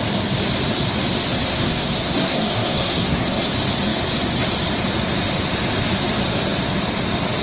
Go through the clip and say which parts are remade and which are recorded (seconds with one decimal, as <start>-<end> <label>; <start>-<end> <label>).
0.0-1.5 recorded; 1.5-3.5 remade; 3.5-7.4 recorded